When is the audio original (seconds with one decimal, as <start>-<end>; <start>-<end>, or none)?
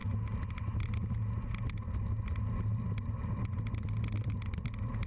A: 0.0-5.1